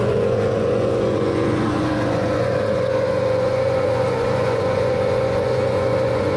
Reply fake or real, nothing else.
fake